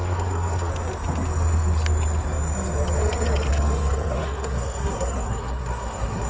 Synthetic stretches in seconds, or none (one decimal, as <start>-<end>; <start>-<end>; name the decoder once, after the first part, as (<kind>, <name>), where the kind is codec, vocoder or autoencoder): 0.0-0.7 (codec, SNAC); 3.5-6.3